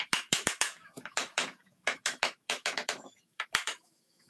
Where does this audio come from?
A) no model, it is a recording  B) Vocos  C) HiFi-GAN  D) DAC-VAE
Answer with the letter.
D